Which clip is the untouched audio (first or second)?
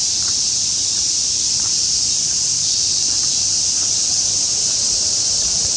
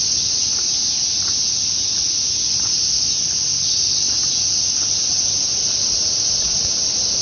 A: second